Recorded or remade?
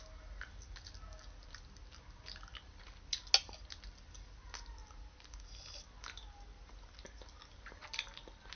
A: recorded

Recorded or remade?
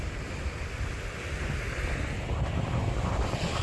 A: recorded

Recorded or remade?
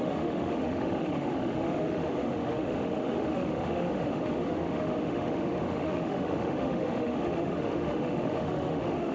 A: remade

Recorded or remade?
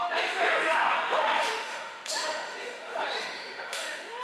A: remade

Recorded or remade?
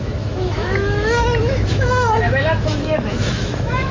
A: remade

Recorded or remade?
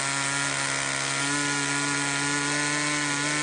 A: recorded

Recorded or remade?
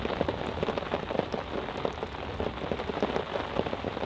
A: recorded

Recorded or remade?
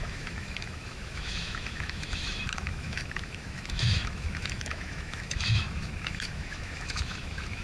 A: remade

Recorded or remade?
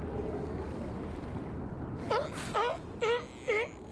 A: recorded